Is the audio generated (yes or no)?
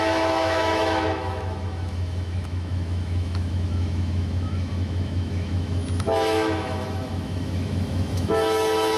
yes